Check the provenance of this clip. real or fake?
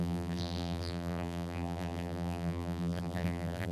fake